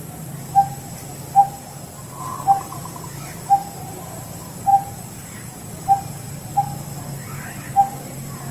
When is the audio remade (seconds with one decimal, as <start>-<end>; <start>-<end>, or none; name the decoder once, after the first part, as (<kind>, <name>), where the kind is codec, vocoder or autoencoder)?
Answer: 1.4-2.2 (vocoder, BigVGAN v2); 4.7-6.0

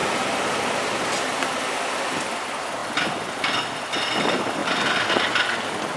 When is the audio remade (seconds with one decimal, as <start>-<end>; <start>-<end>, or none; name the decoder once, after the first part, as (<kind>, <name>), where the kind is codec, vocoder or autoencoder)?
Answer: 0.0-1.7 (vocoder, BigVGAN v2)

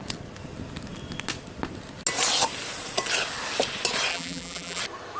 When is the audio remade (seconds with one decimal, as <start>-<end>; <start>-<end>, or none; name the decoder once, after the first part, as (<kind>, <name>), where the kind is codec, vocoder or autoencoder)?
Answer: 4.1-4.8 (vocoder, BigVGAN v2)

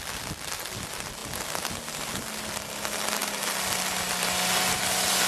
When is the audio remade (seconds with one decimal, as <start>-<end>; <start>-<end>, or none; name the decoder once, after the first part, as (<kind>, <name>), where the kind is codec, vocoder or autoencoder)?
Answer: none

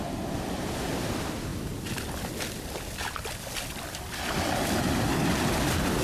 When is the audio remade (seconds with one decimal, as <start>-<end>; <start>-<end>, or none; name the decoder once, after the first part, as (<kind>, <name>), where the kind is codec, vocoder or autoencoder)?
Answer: none